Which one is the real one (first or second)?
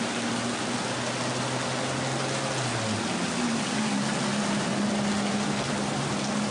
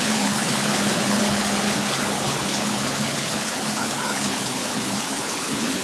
first